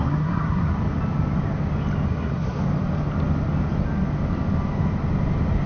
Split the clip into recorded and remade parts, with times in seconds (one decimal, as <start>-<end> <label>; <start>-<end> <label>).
0.0-0.7 remade; 0.7-2.1 recorded; 2.1-2.6 remade; 2.6-5.7 recorded